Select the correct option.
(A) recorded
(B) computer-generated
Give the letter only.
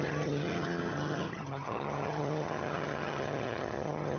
B